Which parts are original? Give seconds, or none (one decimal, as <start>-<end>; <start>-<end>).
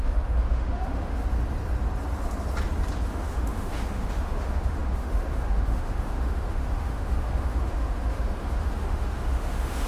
1.2-3.1